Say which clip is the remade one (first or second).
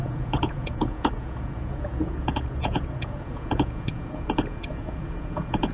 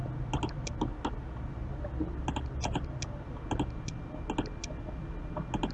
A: first